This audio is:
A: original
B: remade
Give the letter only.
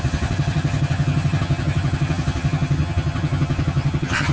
B